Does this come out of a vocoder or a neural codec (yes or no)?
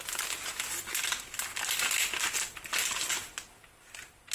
no